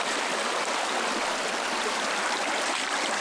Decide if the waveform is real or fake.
fake